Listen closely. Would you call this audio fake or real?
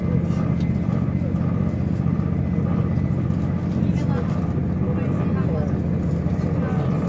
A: real